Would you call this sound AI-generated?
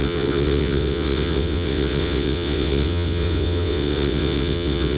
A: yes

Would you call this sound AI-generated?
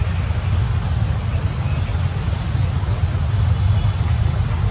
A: no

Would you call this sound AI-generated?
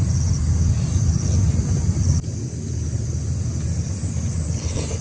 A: no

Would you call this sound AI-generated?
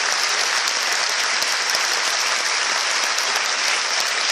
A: no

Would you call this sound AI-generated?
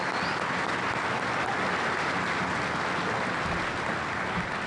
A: no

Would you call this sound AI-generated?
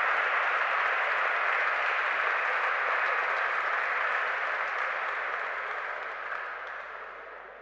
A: no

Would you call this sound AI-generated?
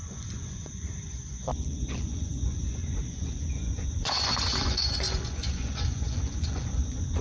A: yes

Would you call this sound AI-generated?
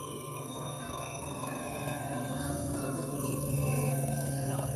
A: yes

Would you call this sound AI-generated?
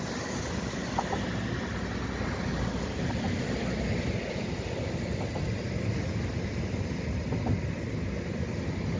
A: no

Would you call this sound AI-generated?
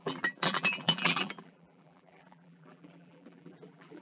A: yes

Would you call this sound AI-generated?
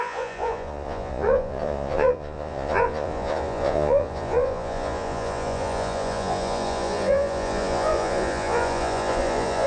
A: yes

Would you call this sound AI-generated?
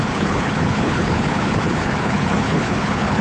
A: yes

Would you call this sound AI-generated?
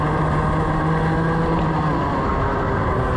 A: no